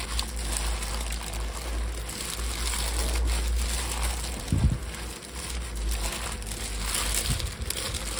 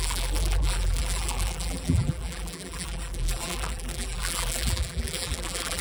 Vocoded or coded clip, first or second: second